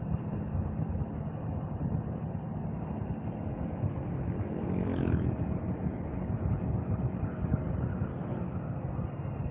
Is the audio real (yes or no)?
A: yes